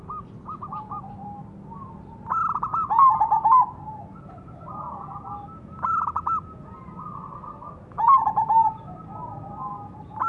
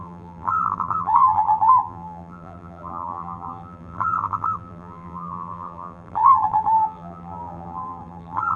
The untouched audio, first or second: first